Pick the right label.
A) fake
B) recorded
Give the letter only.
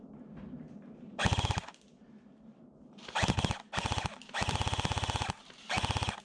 B